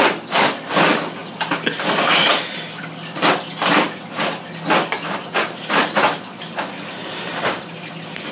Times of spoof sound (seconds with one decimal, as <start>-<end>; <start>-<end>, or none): 5.2-7.9